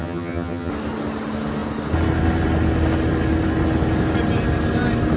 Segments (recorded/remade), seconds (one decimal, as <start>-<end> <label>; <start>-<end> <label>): 0.0-0.7 remade; 0.7-5.2 recorded